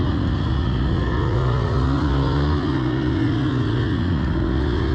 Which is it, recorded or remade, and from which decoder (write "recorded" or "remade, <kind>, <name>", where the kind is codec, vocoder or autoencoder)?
remade, vocoder, Vocos